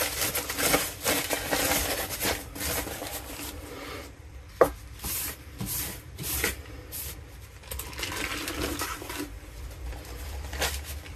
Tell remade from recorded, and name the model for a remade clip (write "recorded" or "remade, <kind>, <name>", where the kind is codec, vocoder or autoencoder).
remade, vocoder, BigVGAN v2